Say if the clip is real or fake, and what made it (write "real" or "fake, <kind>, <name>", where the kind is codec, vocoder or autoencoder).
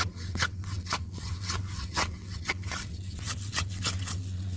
fake, vocoder, WaveNeXt